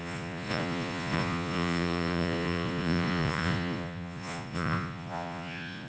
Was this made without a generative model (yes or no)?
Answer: no